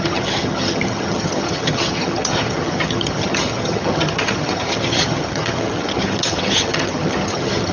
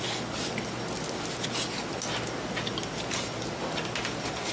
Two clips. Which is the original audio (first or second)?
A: second